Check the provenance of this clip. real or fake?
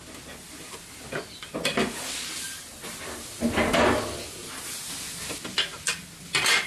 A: real